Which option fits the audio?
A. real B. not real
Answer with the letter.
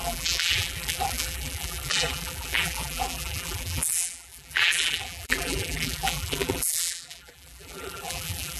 B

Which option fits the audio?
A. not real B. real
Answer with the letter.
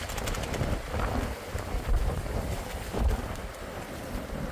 A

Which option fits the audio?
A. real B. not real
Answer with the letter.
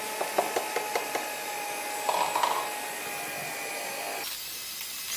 A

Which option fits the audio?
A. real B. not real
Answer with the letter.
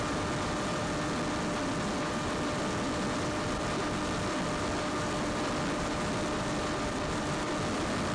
A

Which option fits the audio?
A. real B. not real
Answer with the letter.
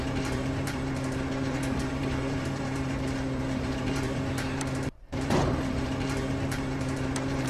B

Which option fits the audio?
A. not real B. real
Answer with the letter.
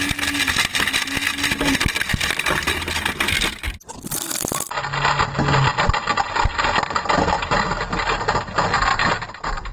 B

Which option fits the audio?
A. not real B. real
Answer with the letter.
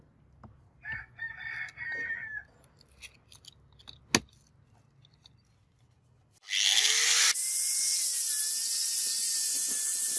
B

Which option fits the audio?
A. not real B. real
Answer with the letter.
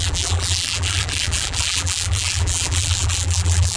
A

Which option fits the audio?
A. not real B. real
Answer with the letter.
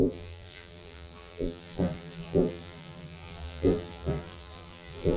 A